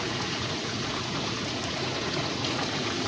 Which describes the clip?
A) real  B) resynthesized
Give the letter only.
B